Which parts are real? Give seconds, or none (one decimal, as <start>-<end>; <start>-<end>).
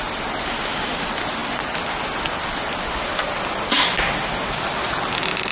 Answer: 0.0-5.5